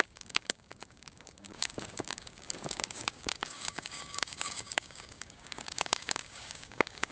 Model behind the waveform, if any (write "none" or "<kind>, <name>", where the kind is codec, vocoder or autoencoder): codec, DAC